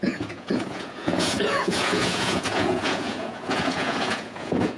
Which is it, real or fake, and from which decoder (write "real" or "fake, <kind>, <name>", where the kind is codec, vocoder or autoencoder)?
fake, vocoder, Vocos